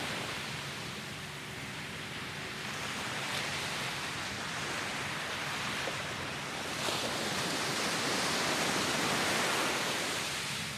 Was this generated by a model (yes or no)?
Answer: yes